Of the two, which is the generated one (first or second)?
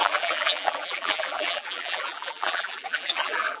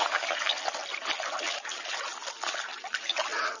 first